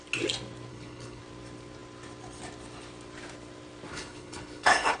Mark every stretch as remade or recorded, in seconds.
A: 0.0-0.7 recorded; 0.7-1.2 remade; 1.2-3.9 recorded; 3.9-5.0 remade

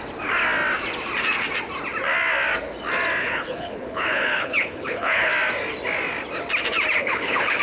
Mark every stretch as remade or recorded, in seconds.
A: 0.0-3.2 recorded; 3.2-5.3 remade; 5.3-7.0 recorded; 7.0-7.6 remade

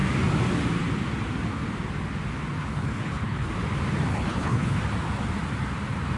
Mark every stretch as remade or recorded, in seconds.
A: 0.0-2.6 recorded; 2.6-3.5 remade; 3.5-4.1 recorded; 4.1-4.8 remade; 4.8-6.2 recorded